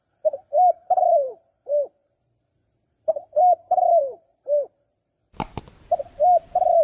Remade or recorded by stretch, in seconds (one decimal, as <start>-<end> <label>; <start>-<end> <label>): 0.0-0.8 recorded; 0.8-1.6 remade; 1.6-2.0 recorded; 2.0-5.2 remade; 5.2-6.8 recorded